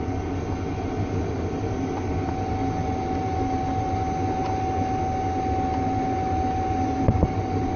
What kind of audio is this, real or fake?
real